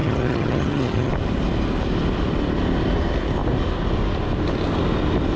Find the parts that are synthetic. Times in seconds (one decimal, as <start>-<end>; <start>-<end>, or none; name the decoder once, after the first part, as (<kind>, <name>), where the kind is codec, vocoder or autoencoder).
0.0-1.1 (vocoder, HiFi-GAN)